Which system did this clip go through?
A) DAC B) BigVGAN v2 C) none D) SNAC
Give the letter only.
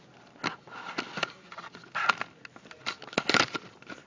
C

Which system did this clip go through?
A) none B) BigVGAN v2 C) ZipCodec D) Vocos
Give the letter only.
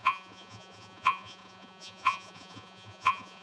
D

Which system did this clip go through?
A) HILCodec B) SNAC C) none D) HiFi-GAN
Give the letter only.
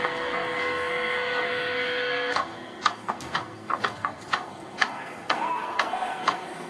B